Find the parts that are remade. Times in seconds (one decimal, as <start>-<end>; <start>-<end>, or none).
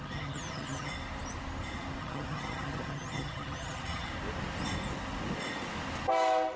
0.0-0.9; 2.0-4.1